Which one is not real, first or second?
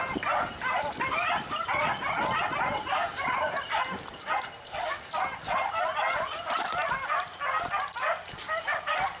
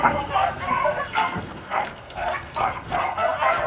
second